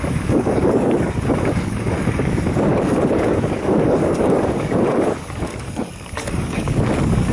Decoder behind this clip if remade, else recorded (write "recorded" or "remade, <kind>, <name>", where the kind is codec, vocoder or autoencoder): remade, codec, DAC